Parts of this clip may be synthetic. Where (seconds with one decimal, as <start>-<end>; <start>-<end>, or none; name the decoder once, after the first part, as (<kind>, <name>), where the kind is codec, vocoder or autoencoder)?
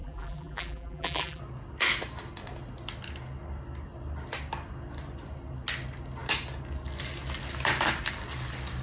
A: 0.0-1.4 (vocoder, BigVGAN v2)